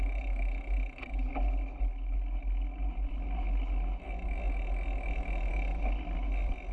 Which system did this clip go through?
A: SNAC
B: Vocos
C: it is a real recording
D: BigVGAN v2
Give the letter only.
C